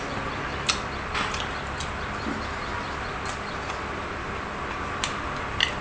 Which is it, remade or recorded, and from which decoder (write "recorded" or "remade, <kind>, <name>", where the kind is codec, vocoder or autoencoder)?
recorded